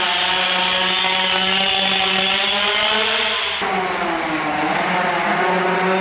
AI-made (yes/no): no